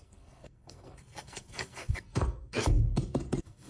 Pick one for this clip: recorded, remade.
remade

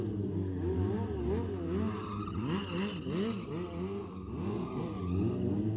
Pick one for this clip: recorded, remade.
recorded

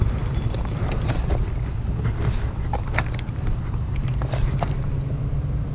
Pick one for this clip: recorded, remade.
recorded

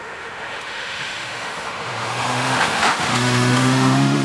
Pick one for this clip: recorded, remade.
remade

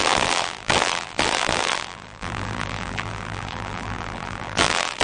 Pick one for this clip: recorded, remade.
remade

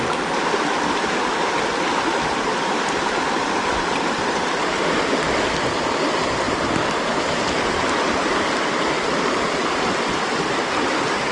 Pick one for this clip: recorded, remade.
recorded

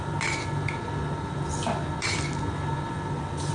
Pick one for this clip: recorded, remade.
recorded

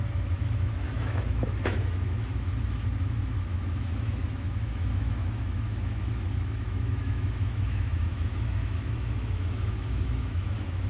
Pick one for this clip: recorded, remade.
remade